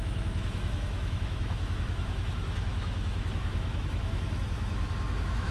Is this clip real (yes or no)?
no